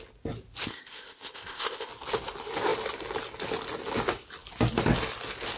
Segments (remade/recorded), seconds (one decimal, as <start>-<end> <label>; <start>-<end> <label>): 0.0-0.7 recorded; 0.7-1.9 remade; 1.9-5.6 recorded